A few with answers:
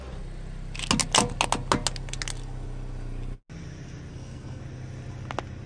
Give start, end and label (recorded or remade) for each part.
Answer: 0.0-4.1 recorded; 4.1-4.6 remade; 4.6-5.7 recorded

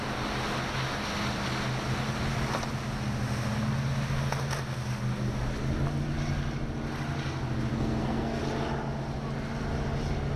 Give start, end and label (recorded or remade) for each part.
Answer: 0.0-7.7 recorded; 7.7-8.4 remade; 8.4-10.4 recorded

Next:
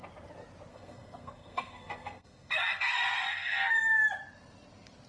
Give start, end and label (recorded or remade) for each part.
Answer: 0.0-0.7 recorded; 0.7-3.8 remade; 3.8-5.1 recorded